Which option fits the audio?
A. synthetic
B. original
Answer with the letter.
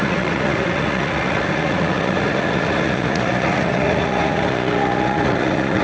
A